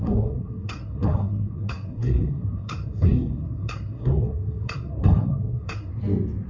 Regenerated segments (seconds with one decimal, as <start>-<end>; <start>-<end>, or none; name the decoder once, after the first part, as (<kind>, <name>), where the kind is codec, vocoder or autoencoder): 0.0-5.9 (codec, SNAC)